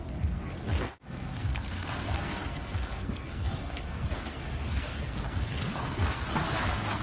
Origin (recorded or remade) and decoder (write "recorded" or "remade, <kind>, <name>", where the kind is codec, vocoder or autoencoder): remade, codec, SNAC